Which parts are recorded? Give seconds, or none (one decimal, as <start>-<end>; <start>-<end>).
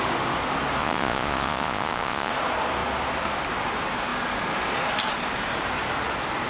0.0-0.8; 2.3-6.5